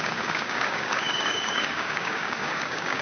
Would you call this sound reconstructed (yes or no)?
yes